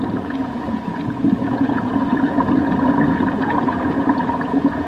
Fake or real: fake